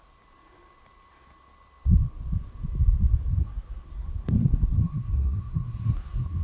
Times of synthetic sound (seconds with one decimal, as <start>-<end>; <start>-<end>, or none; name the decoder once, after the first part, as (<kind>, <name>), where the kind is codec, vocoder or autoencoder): 3.4-6.4 (codec, SNAC)